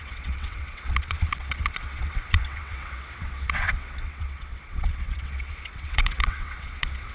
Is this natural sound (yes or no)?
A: no